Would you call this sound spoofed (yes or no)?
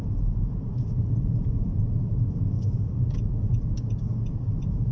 yes